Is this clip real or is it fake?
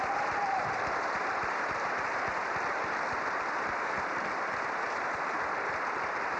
fake